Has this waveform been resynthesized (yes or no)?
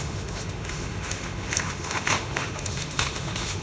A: yes